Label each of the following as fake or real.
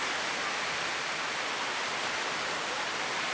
real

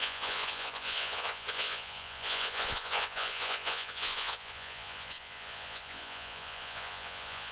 fake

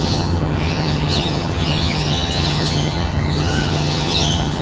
fake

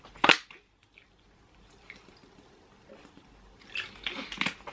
real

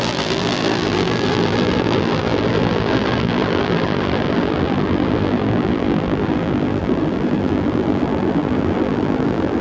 fake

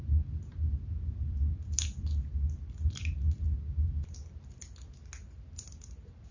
real